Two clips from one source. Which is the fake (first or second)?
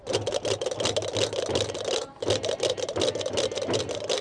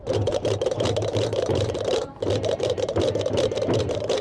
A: second